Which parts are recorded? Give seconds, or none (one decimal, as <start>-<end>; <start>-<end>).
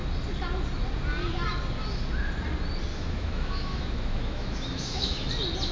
0.0-2.9; 5.3-5.7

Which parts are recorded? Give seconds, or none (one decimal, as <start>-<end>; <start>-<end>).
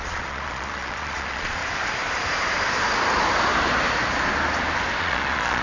1.6-5.0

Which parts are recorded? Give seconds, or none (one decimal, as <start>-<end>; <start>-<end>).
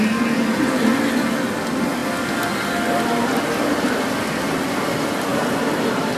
0.0-6.2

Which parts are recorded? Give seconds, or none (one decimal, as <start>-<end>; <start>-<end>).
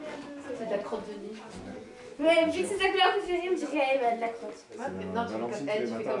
0.0-2.1; 2.7-6.2